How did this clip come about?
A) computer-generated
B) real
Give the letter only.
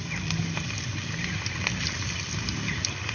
B